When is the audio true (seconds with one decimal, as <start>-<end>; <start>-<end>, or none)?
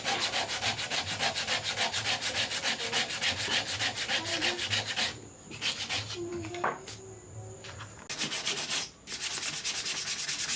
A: 0.0-4.3; 4.9-6.3; 7.0-10.6